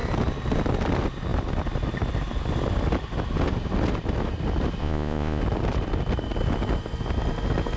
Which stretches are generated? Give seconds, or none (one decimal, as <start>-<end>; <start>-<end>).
4.8-5.4